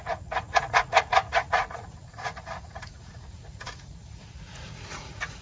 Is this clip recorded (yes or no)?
no